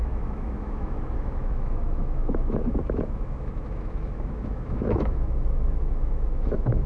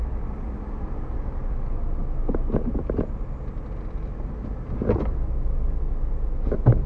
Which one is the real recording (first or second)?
second